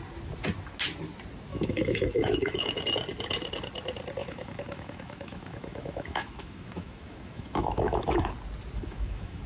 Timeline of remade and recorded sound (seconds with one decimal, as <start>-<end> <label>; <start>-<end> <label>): 0.0-1.5 recorded; 1.5-2.8 remade; 2.8-4.2 recorded; 4.2-8.3 remade; 8.3-8.8 recorded; 8.8-9.5 remade